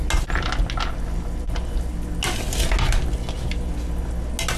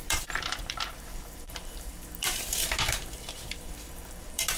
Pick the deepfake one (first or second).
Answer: second